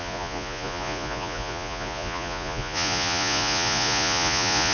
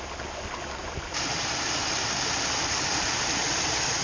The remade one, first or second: first